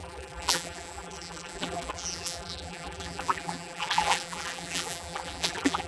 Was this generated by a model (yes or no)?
yes